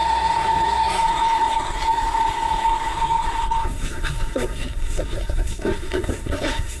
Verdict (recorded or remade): remade